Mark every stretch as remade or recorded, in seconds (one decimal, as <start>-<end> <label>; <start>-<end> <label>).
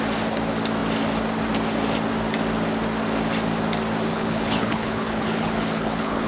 0.0-4.1 recorded; 4.1-6.3 remade